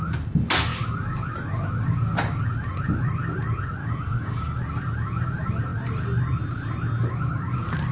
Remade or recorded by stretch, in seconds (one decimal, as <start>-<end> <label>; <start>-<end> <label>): 0.0-3.8 recorded; 3.8-4.6 remade; 4.6-7.9 recorded